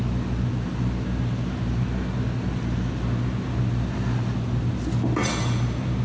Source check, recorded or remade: recorded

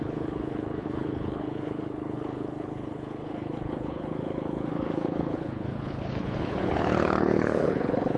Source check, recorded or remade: remade